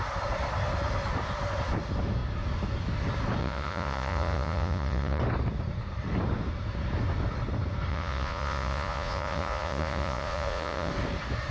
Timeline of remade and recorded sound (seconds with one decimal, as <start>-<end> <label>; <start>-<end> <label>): 0.0-3.4 recorded; 3.4-5.2 remade; 5.2-7.9 recorded; 7.9-10.9 remade; 10.9-11.5 recorded